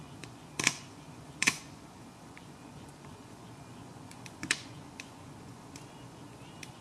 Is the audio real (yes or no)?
no